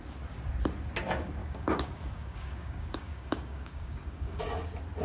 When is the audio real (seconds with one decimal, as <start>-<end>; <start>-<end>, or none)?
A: 0.0-1.4; 4.4-5.0